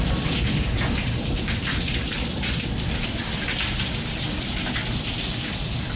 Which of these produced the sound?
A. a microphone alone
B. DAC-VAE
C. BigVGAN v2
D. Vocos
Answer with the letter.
A